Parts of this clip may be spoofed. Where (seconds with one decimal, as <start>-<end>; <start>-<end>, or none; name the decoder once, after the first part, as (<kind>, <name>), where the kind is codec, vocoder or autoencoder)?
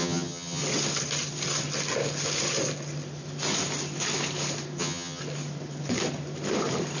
0.0-0.6 (vocoder, HiFi-GAN); 4.8-5.2